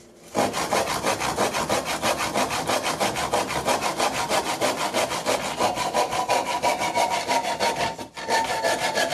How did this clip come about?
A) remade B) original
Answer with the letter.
B